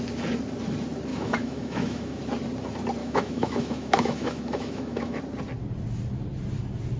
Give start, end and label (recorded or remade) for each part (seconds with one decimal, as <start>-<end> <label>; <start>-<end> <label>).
0.0-1.1 recorded; 1.1-2.2 remade; 2.2-3.0 recorded; 3.0-5.2 remade; 5.2-7.0 recorded